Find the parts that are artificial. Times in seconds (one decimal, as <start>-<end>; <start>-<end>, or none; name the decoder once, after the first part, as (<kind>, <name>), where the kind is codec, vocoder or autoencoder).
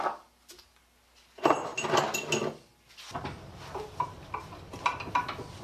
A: none